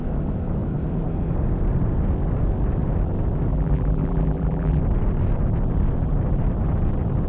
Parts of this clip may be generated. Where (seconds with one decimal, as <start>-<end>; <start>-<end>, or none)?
3.5-4.8